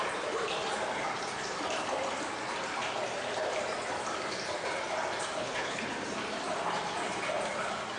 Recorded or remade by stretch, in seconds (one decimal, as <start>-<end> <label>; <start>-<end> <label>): 0.0-5.4 recorded; 5.4-5.9 remade; 5.9-8.0 recorded